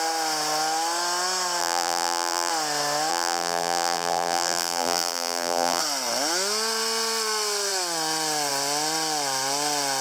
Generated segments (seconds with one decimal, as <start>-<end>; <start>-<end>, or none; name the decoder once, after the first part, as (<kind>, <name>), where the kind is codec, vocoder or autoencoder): 1.6-2.5 (vocoder, BigVGAN v2); 3.1-5.8